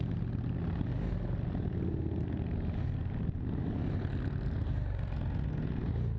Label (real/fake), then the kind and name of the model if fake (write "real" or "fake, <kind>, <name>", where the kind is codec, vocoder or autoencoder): real